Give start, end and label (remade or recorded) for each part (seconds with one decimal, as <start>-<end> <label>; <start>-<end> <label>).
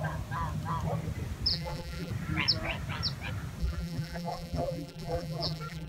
0.0-1.5 recorded; 1.5-2.1 remade; 2.1-3.6 recorded; 3.6-5.9 remade